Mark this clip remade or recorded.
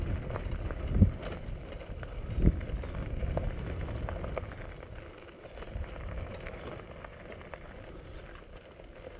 recorded